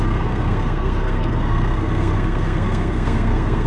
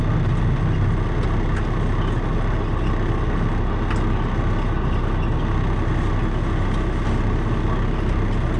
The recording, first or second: second